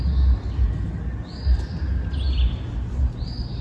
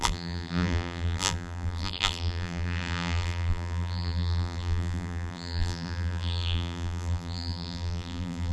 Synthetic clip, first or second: second